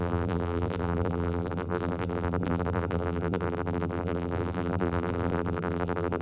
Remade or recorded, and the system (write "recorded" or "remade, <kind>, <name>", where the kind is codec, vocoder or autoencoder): remade, vocoder, BigVGAN v2